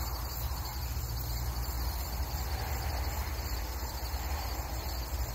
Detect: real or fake real